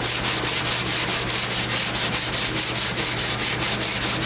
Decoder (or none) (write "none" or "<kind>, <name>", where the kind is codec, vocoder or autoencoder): none